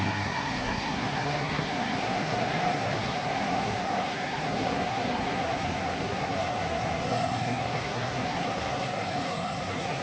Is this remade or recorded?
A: remade